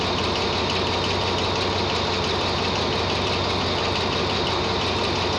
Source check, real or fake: real